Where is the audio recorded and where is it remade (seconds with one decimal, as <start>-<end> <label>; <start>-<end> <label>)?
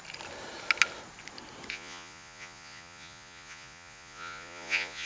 0.0-1.7 recorded; 1.7-5.1 remade